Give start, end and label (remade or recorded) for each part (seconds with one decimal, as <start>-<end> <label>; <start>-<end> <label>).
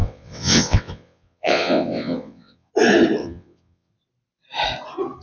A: 0.0-2.7 remade; 2.7-3.2 recorded; 3.2-3.9 remade; 3.9-5.2 recorded